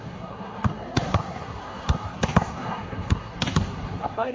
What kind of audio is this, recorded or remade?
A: remade